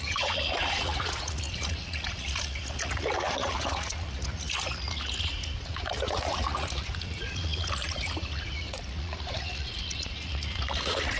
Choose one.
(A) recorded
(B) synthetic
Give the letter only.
B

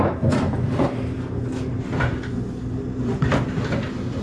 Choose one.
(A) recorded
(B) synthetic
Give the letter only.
A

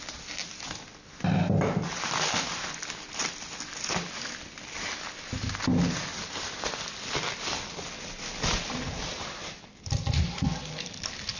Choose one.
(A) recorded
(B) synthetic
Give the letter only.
A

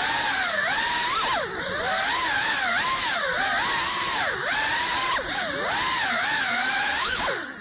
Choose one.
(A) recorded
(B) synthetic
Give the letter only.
A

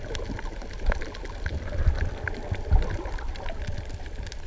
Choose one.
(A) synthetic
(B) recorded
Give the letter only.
B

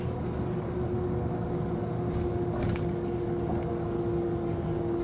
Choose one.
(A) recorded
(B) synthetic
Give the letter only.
B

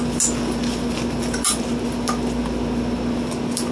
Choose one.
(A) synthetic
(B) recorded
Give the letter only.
B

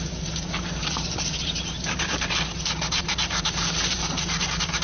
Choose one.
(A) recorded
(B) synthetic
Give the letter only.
B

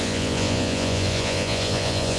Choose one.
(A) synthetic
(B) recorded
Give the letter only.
A